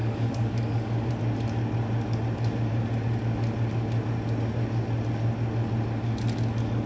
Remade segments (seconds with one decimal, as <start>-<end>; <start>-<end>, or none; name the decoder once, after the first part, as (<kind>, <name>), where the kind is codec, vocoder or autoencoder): 0.0-1.1 (codec, DAC)